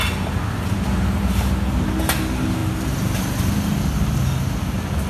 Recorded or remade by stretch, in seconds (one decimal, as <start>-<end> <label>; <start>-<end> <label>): 0.0-5.1 recorded